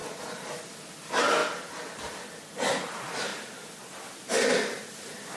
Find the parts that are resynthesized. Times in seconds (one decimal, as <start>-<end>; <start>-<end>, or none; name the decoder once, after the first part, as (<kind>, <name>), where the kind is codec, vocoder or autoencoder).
none